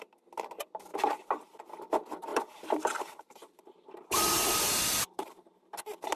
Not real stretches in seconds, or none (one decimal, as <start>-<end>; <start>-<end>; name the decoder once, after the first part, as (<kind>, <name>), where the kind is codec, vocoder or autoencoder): 0.9-1.6 (vocoder, BigVGAN v2); 2.3-6.2